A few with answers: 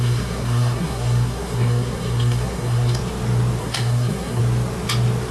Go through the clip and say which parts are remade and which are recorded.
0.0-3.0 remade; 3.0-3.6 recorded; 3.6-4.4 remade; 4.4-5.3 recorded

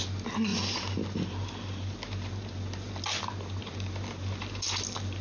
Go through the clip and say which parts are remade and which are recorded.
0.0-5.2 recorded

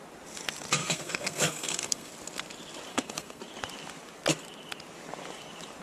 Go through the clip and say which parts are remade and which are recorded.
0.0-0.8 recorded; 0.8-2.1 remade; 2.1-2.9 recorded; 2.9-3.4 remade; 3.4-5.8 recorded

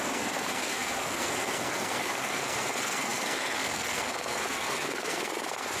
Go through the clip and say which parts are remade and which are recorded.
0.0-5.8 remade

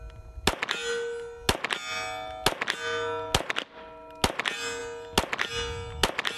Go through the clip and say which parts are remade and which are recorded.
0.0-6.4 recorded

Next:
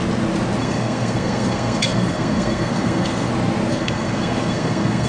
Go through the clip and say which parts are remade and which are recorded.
0.0-0.6 recorded; 0.6-3.3 remade; 3.3-3.7 recorded; 3.7-5.1 remade

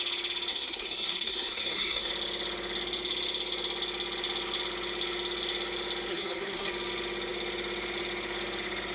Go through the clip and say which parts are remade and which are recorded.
0.0-0.5 recorded; 0.5-2.1 remade; 2.1-6.1 recorded; 6.1-6.7 remade; 6.7-8.9 recorded